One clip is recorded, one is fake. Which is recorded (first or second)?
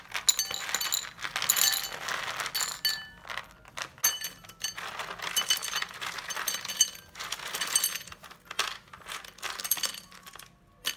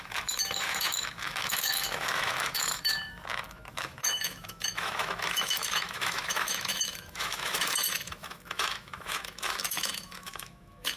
first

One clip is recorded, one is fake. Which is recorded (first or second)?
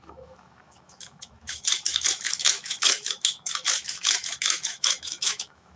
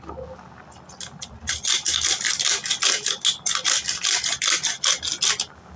second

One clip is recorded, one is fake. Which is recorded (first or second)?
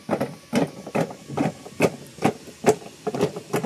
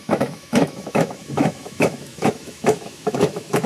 first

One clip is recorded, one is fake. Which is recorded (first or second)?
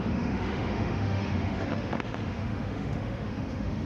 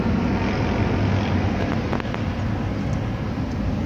second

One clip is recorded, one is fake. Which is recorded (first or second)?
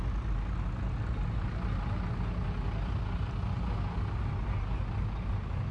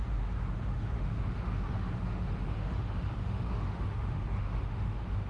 first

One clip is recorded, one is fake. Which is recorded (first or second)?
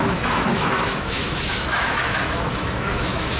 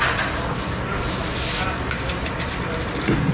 second